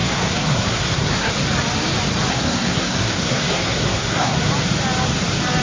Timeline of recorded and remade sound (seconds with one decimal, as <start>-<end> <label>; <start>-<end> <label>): 0.0-1.3 remade; 1.3-2.3 recorded; 2.3-4.5 remade; 4.5-5.6 recorded